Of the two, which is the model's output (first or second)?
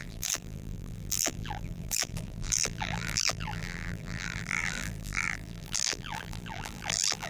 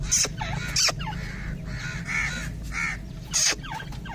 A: first